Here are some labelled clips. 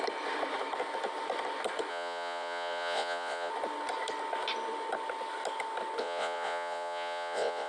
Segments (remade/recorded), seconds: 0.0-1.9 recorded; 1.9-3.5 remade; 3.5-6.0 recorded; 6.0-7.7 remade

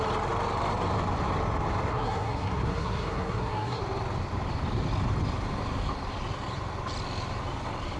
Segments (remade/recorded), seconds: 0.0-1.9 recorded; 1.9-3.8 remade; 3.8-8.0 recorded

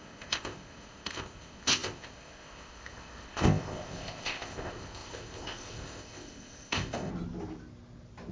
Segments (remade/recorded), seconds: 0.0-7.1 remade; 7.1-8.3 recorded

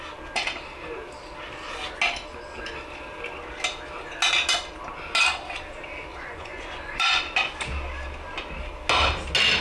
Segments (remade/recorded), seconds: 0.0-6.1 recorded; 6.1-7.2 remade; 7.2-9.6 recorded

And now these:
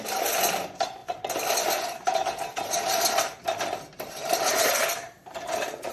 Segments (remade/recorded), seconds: 0.0-5.9 recorded